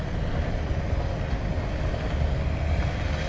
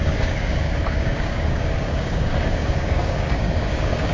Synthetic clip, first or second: second